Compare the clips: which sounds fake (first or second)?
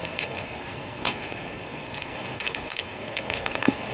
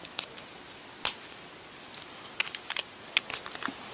first